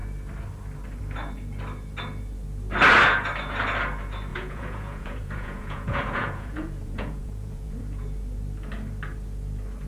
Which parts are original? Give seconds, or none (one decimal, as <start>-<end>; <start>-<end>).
0.0-4.3; 7.8-9.9